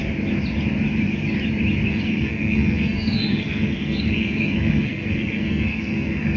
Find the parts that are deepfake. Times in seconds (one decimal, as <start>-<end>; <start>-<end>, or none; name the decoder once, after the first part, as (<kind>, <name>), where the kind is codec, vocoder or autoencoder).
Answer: 1.9-6.4 (codec, SNAC)